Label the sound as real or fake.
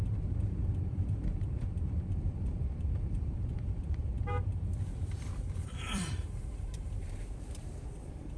fake